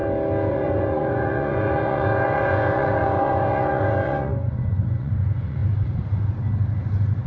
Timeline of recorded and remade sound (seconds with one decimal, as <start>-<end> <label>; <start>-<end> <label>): 0.0-0.5 recorded; 0.5-5.6 remade; 5.6-7.3 recorded